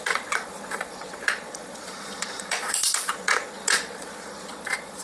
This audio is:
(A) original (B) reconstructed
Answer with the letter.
B